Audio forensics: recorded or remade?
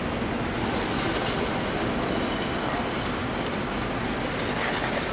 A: recorded